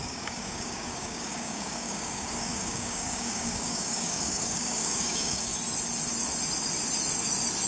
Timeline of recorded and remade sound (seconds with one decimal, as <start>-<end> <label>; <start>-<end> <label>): 0.0-5.5 remade; 5.5-7.7 recorded